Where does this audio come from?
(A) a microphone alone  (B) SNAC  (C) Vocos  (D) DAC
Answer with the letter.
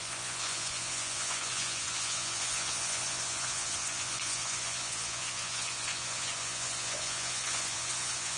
C